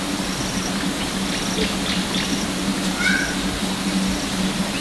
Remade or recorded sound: recorded